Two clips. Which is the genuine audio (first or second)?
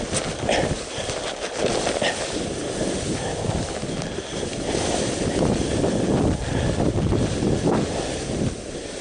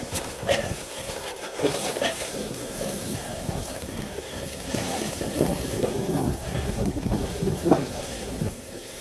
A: first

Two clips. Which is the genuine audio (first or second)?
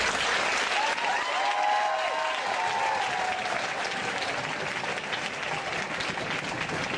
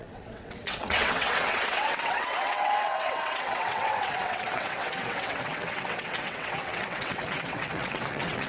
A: first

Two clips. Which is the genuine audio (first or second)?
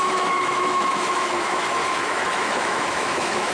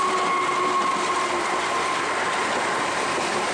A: second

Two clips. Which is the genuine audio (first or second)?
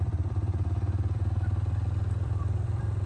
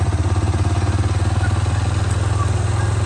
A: second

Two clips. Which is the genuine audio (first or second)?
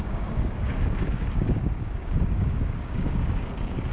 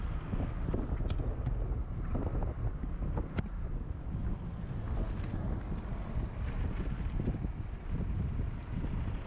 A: second